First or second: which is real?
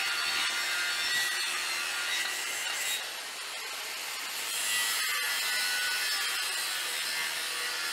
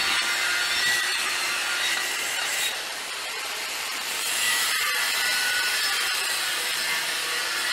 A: first